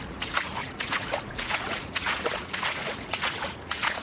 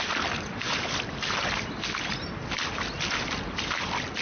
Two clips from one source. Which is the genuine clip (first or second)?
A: second